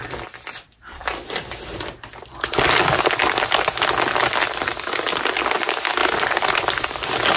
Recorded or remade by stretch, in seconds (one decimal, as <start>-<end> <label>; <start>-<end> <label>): 0.0-6.0 recorded; 6.0-6.6 remade; 6.6-7.4 recorded